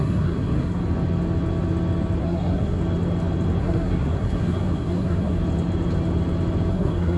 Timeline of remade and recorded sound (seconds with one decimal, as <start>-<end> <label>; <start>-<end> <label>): 0.0-0.8 remade; 0.8-2.2 recorded; 2.2-2.8 remade; 2.8-3.6 recorded; 3.6-5.4 remade; 5.4-6.7 recorded; 6.7-7.2 remade